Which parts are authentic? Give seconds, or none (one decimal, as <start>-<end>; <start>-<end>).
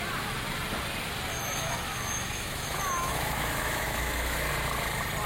0.0-1.3; 4.5-5.3